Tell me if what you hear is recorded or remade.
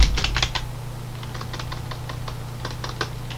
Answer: recorded